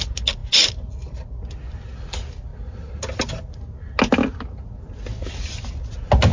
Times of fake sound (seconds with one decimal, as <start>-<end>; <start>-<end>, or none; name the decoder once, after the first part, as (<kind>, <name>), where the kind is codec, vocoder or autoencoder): none